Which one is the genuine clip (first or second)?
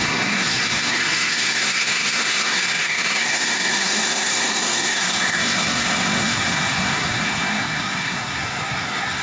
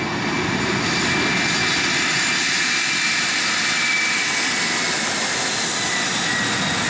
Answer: second